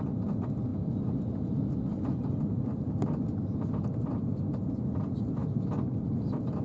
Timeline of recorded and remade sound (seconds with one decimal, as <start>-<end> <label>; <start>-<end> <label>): 0.0-6.6 recorded